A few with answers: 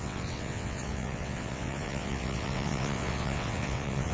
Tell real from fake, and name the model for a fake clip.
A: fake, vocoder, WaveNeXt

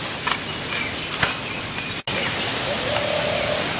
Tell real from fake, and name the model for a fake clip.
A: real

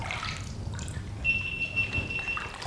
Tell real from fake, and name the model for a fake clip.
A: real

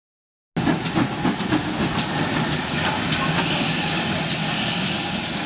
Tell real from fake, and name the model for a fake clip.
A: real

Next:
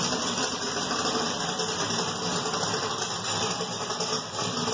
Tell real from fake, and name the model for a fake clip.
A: fake, vocoder, BigVGAN v2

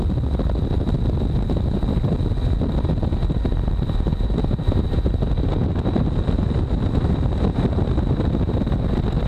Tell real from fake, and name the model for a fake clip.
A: real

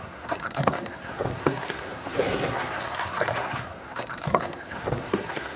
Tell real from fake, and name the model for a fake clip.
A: fake, codec, SNAC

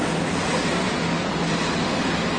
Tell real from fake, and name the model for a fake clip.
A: real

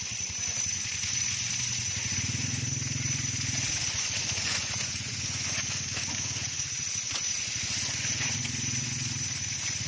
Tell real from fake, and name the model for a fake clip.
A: fake, vocoder, Vocos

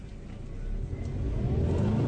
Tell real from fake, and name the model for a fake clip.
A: real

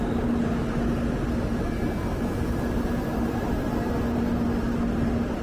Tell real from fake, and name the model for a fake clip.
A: real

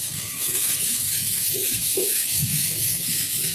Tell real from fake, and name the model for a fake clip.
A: fake, codec, SNAC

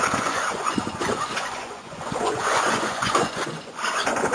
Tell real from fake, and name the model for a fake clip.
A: fake, vocoder, Vocos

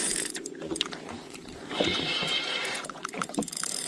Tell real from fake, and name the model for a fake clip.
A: fake, vocoder, Vocos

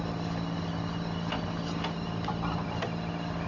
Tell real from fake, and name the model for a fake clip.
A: real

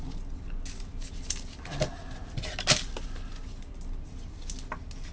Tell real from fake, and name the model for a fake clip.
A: real